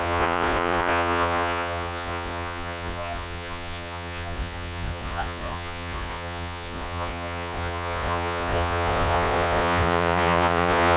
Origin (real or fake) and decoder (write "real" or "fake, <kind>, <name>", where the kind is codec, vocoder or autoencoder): fake, vocoder, Vocos